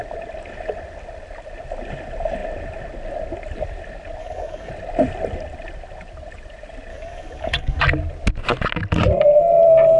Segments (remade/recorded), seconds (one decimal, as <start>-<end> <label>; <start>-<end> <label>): 0.0-4.2 recorded; 4.2-4.7 remade; 4.7-6.9 recorded; 6.9-7.8 remade; 7.8-10.0 recorded